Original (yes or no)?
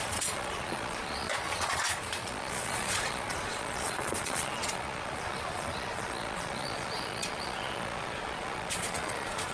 no